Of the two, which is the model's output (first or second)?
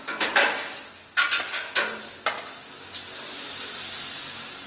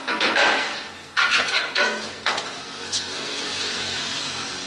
second